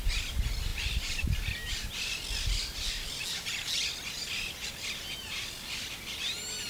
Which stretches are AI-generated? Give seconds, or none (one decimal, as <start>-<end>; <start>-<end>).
none